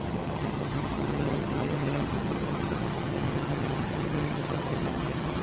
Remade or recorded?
remade